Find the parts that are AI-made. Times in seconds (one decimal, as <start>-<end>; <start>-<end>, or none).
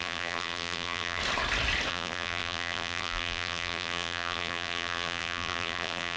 0.0-1.2; 1.9-6.2